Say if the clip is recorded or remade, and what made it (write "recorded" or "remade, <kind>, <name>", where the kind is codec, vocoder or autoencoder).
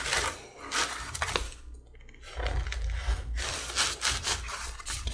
recorded